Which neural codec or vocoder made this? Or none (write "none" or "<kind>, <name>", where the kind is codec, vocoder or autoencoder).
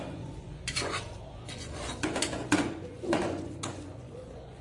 vocoder, Vocos